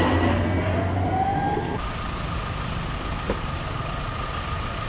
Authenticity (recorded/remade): recorded